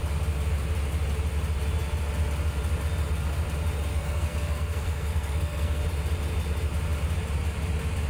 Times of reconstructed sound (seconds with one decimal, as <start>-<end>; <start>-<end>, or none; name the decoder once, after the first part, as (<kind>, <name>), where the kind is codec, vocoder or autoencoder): 3.9-5.8 (codec, SNAC)